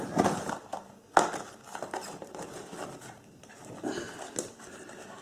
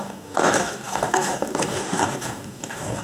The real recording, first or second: first